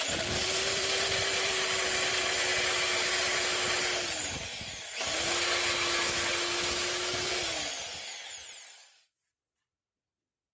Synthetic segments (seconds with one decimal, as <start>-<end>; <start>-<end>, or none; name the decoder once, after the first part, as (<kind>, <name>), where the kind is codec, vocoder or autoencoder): 0.0-2.5 (vocoder, BigVGAN v2); 7.3-7.7; 9.0-10.5